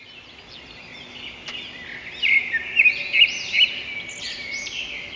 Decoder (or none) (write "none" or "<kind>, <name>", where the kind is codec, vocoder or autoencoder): none